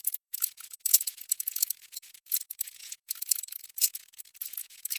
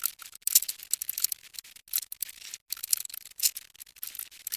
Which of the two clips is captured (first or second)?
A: second